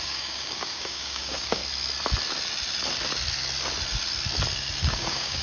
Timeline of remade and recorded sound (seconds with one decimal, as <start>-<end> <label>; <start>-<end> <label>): 0.0-1.6 remade; 1.6-4.8 recorded; 4.8-5.4 remade